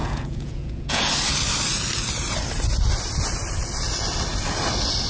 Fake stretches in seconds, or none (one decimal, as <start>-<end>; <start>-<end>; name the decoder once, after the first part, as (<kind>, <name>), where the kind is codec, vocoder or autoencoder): 0.0-1.0 (vocoder, Vocos)